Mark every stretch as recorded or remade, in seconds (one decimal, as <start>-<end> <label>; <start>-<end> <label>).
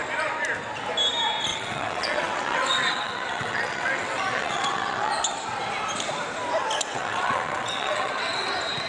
0.0-1.5 recorded; 1.5-5.1 remade; 5.1-6.9 recorded; 6.9-8.5 remade; 8.5-8.9 recorded